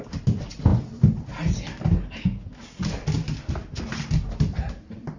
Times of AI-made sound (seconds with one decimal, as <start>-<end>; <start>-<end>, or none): none